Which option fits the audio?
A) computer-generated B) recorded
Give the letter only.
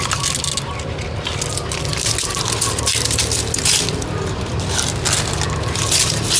B